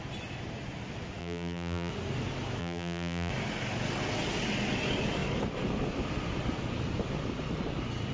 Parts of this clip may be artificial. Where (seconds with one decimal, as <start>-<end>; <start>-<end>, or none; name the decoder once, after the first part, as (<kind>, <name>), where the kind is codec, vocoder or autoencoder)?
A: 1.2-1.9 (vocoder, BigVGAN v2); 2.6-3.3